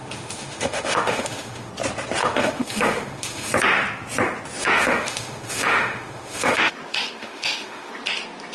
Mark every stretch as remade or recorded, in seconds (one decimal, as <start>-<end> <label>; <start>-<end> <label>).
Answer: 0.0-1.7 remade; 1.7-2.2 recorded; 2.2-3.5 remade; 3.5-4.6 recorded; 4.6-6.7 remade; 6.7-7.2 recorded; 7.2-7.9 remade; 7.9-8.5 recorded